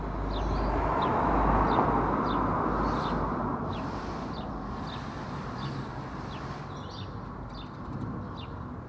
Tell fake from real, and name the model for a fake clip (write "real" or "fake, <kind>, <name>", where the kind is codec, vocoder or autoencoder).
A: real